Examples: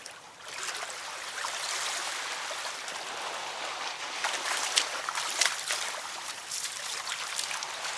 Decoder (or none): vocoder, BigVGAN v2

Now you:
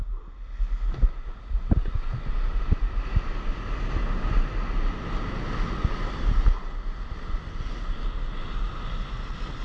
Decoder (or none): none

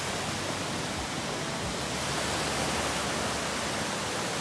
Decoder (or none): none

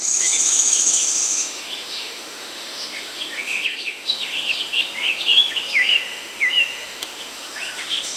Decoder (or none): autoencoder, DAC-VAE